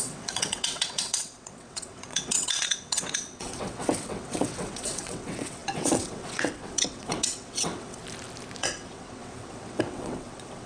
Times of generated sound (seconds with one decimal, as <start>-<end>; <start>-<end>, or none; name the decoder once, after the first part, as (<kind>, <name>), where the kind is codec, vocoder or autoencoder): 0.0-8.0 (vocoder, WaveNeXt); 8.6-10.7